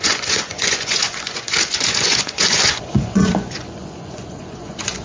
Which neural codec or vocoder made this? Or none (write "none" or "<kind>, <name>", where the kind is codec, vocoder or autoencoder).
vocoder, Vocos